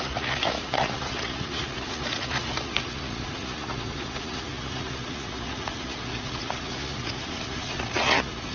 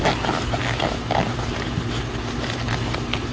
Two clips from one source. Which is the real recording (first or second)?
second